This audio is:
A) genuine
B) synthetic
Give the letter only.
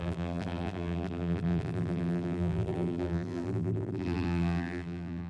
B